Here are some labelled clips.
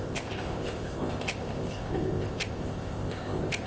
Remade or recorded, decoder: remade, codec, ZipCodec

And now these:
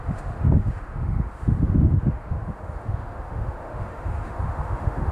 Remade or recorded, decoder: remade, autoencoder, DAC-VAE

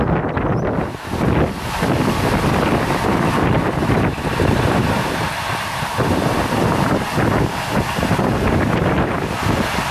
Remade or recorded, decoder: recorded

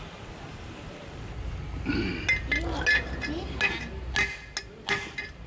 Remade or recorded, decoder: recorded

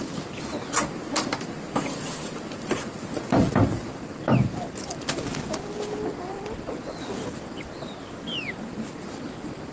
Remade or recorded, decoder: recorded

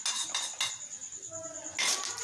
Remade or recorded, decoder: recorded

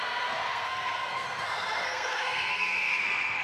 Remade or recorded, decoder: remade, codec, SNAC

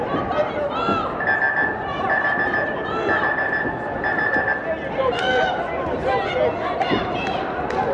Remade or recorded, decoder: recorded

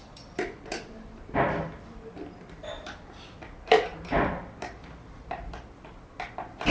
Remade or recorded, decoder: recorded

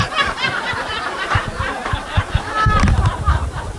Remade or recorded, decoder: remade, vocoder, BigVGAN v2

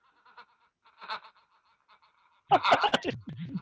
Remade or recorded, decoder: recorded